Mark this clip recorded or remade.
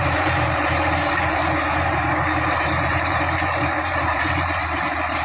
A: remade